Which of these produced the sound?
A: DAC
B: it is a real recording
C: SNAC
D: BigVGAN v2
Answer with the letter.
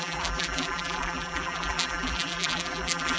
D